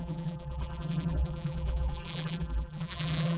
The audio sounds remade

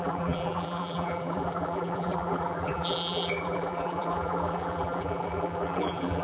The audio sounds remade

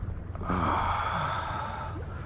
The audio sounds recorded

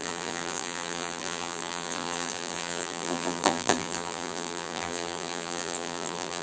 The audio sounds remade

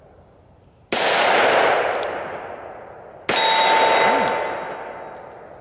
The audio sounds recorded